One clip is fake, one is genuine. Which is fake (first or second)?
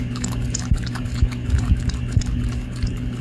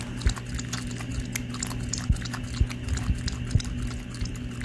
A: first